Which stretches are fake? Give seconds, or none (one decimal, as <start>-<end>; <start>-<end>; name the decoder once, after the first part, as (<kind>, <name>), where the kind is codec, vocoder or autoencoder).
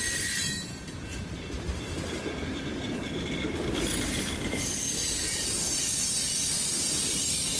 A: 5.0-6.1 (vocoder, BigVGAN v2)